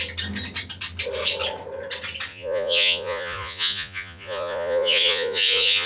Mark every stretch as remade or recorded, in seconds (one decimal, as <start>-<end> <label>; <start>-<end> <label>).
0.0-2.3 recorded; 2.3-5.9 remade